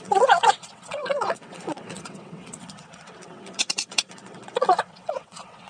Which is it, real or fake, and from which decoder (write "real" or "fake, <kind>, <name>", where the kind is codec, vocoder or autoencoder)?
fake, vocoder, WaveNeXt